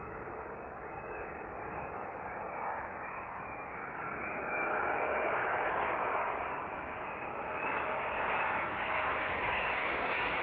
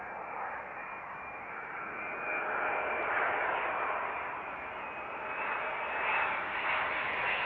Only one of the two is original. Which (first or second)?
second